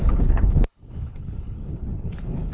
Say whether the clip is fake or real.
fake